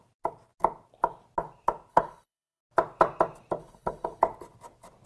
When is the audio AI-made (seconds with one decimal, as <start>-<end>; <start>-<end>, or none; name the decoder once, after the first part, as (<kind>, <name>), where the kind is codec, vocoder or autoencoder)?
1.9-2.6 (codec, HILCodec); 3.6-4.2